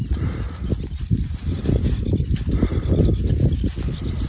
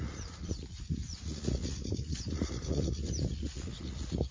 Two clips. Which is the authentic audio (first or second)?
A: first